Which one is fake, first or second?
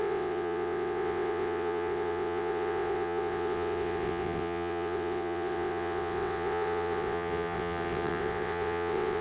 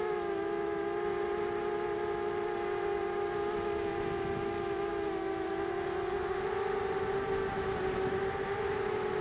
first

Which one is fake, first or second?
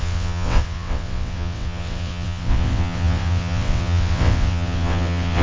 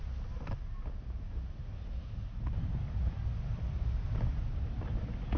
first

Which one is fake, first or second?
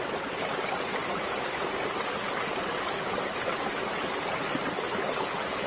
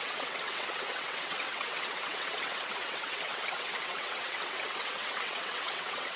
second